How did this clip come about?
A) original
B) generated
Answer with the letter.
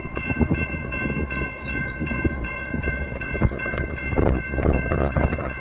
B